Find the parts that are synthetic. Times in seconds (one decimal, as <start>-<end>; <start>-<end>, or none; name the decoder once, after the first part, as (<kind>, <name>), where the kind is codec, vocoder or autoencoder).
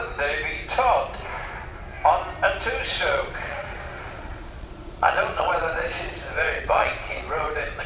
2.9-7.9 (vocoder, Vocos)